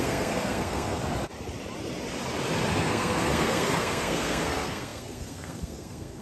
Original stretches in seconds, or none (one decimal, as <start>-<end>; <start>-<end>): 1.0-2.7